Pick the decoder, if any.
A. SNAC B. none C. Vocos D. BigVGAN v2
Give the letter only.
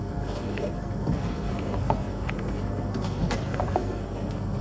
A